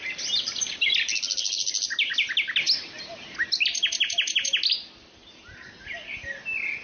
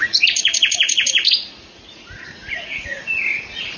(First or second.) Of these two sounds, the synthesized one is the second